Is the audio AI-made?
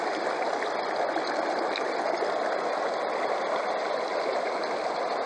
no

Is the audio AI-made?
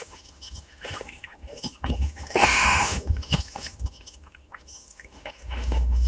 yes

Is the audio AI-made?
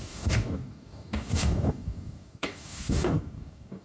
yes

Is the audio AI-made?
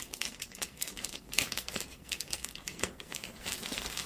yes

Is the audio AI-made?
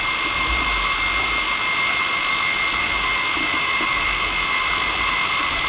no